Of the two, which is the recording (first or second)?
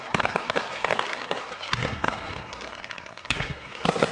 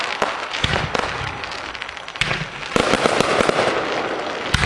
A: second